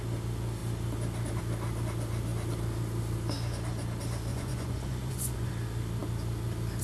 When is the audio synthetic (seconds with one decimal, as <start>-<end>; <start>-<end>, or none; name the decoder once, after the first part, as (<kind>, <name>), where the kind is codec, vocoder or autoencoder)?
4.3-5.5 (vocoder, Vocos)